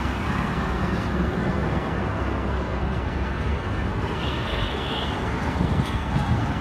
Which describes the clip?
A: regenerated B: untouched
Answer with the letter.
A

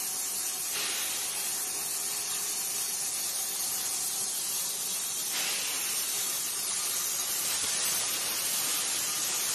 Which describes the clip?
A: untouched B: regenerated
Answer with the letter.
A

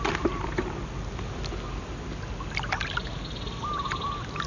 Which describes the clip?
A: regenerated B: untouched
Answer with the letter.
B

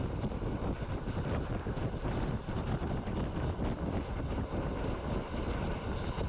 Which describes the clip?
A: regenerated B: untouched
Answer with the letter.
B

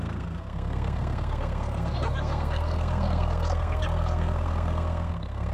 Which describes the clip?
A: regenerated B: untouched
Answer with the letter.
A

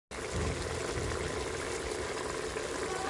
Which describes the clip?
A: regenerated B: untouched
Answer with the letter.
B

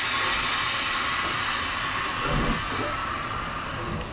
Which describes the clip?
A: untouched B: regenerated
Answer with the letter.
A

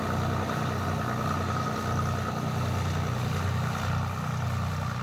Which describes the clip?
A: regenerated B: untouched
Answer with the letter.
B